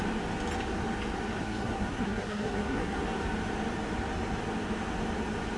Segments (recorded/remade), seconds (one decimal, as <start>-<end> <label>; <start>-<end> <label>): 0.0-1.4 recorded; 1.4-3.0 remade; 3.0-5.6 recorded